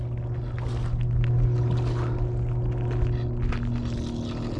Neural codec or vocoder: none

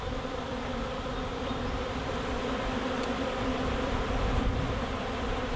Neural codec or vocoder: vocoder, BigVGAN v2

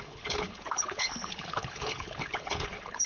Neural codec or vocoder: codec, HILCodec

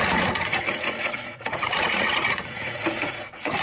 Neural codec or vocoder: vocoder, Vocos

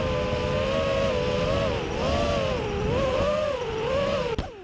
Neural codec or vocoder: none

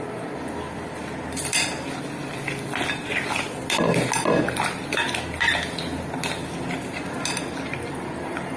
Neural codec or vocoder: none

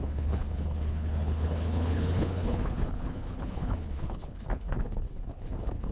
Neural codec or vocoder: codec, HILCodec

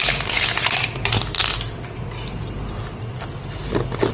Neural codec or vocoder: none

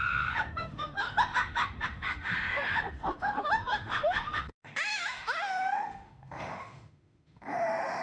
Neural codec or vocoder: autoencoder, DAC-VAE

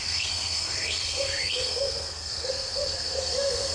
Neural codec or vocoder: codec, SNAC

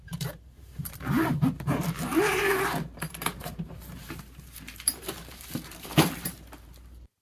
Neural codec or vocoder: vocoder, BigVGAN v2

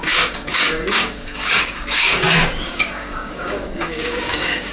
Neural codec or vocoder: codec, DAC